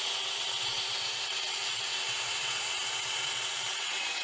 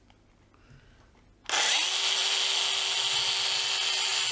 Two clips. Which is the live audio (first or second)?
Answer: second